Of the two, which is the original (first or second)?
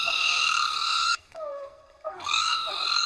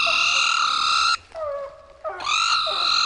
second